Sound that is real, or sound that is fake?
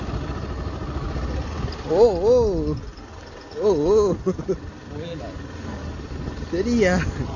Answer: real